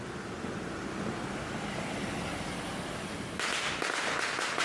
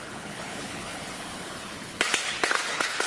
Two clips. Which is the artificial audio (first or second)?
second